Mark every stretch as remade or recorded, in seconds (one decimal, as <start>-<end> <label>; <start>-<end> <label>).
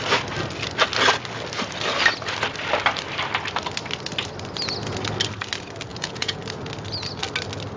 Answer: 0.0-5.9 recorded; 5.9-6.4 remade; 6.4-7.8 recorded